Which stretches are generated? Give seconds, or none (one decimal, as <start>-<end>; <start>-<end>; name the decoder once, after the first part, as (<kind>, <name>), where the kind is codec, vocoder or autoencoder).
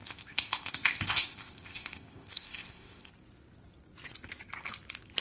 0.0-3.1 (codec, ZipCodec)